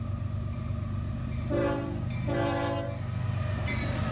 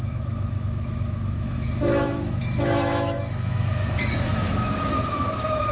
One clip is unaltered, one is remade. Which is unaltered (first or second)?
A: first